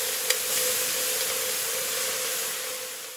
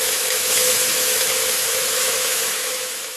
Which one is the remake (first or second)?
second